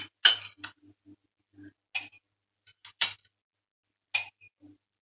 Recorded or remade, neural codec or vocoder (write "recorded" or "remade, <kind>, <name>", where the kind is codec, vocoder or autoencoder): recorded